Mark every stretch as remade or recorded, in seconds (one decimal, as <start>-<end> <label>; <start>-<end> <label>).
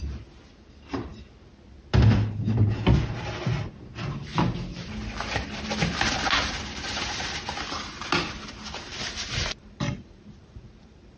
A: 0.0-9.6 recorded; 9.6-11.2 remade